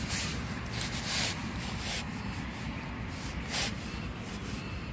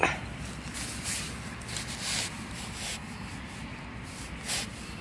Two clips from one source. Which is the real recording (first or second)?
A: second